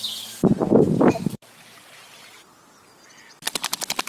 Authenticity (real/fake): real